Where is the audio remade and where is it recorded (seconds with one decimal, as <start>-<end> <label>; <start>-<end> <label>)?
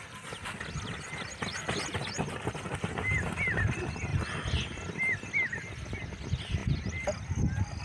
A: 0.0-7.8 recorded